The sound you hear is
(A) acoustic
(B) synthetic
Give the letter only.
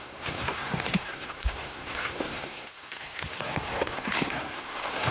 B